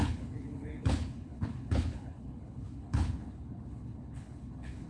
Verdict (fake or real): fake